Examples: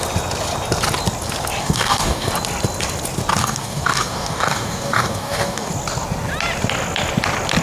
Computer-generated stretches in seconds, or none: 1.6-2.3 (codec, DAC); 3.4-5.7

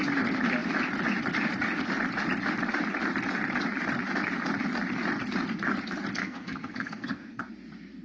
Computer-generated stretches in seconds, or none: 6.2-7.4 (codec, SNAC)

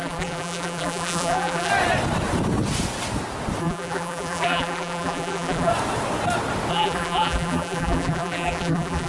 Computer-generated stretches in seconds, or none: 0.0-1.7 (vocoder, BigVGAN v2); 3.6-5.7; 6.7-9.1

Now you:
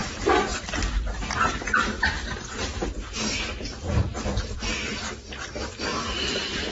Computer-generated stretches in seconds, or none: 4.0-4.9 (vocoder, BigVGAN v2); 5.5-5.9

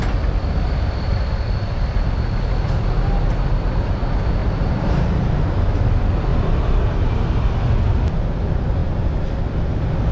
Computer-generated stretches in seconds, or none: 4.4-5.4 (vocoder, BigVGAN v2)